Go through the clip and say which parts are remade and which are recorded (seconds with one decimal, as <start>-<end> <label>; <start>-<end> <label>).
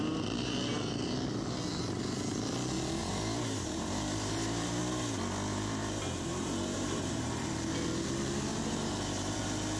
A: 0.0-3.0 recorded; 3.0-4.8 remade; 4.8-5.5 recorded; 5.5-7.5 remade; 7.5-8.5 recorded; 8.5-9.4 remade; 9.4-9.8 recorded